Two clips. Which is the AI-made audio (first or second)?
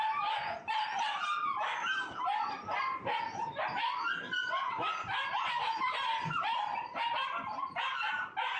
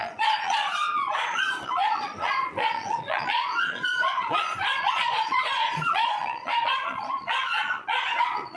second